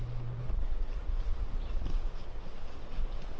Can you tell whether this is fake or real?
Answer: real